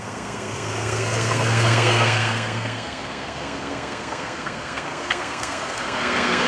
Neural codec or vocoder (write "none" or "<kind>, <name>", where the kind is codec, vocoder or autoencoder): codec, SNAC